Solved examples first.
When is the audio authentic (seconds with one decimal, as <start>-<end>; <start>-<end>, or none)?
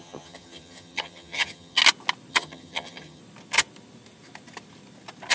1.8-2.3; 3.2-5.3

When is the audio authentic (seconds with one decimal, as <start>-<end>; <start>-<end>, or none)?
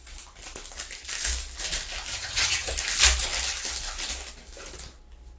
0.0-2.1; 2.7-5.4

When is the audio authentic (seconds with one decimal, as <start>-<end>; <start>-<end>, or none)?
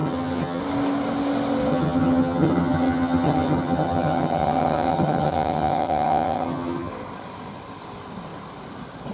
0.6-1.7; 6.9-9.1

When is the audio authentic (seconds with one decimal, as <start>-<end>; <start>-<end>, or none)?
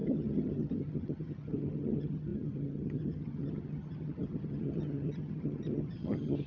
none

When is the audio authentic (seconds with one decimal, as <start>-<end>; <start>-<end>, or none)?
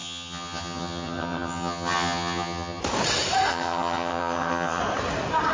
2.8-3.5; 4.8-5.5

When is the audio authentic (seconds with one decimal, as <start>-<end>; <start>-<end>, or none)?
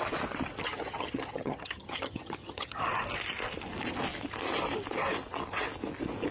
0.0-0.6; 2.8-6.3